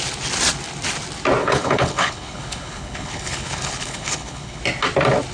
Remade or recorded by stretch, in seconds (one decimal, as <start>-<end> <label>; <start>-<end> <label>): 0.0-1.4 recorded; 1.4-4.6 remade; 4.6-5.3 recorded